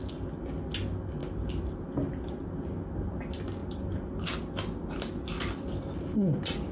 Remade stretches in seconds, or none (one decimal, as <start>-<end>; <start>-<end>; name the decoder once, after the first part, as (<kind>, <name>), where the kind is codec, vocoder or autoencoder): none